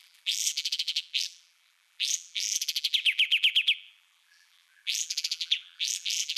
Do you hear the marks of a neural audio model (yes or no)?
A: yes